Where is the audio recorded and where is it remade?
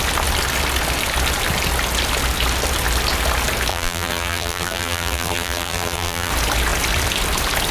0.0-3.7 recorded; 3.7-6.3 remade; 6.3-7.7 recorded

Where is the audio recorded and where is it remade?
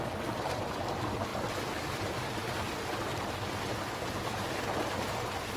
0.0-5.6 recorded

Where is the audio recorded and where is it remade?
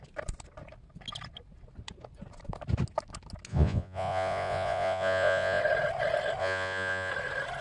0.0-3.5 recorded; 3.5-5.6 remade; 5.6-6.4 recorded; 6.4-7.1 remade; 7.1-7.6 recorded